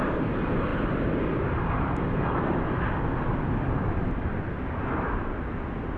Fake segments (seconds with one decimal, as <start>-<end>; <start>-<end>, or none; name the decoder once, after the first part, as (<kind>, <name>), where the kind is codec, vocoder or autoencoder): none